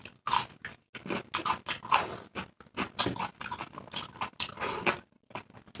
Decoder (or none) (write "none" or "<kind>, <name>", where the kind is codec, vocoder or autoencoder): none